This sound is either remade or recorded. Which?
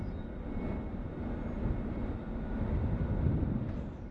recorded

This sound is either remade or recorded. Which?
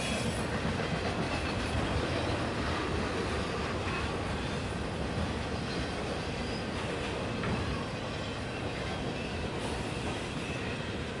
recorded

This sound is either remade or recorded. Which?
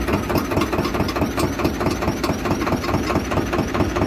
recorded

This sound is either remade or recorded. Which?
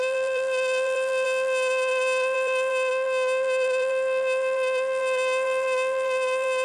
remade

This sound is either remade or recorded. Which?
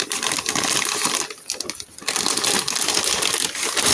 recorded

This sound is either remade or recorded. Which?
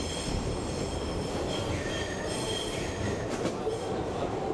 remade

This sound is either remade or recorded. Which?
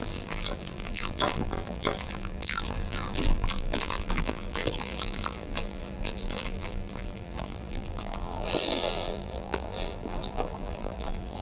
remade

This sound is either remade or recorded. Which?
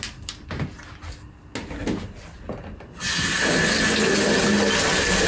recorded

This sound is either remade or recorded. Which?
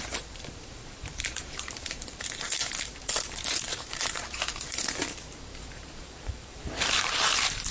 remade